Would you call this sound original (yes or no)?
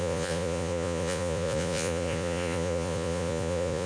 no